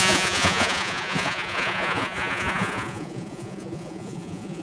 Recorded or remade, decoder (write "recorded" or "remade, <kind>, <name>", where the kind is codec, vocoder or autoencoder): remade, vocoder, Vocos